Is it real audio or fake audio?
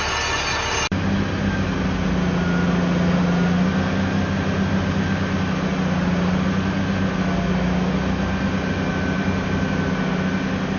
real